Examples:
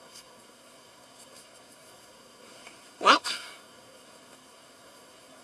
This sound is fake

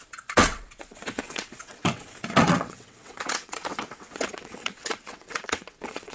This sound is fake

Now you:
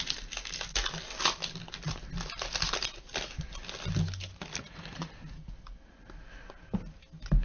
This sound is real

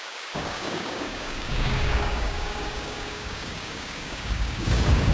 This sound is fake